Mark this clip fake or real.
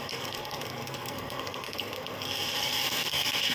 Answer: fake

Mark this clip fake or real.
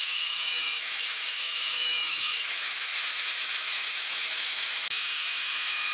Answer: fake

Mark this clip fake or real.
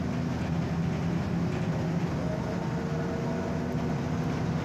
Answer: real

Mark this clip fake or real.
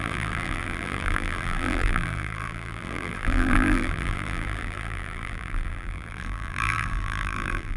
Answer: fake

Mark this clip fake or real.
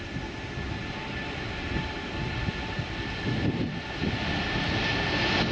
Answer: real